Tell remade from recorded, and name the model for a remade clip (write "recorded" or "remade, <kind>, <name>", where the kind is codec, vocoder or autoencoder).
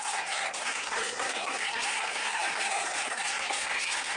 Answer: remade, codec, SNAC